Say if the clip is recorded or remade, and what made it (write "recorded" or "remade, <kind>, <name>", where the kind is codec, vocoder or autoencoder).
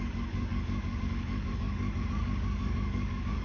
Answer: remade, codec, DAC